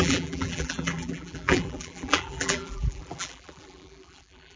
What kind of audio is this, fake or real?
fake